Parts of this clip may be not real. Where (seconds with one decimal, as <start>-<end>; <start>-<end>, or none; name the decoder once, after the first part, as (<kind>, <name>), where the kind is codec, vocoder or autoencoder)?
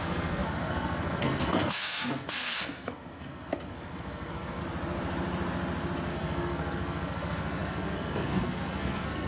0.0-4.6 (codec, SNAC); 6.1-9.3